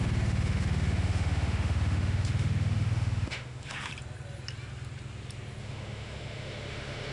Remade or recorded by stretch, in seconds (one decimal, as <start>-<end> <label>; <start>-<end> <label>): 0.0-3.9 remade; 3.9-5.6 recorded; 5.6-7.1 remade